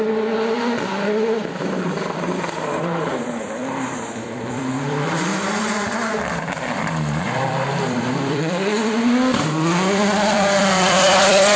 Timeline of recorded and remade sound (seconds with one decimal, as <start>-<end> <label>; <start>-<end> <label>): 0.0-3.6 remade; 3.6-4.1 recorded; 4.1-5.3 remade; 5.3-6.8 recorded; 6.8-11.6 remade